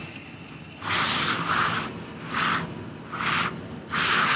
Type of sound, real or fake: real